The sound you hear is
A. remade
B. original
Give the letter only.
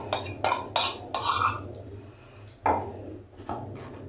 B